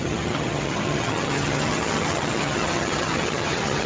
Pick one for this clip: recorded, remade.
remade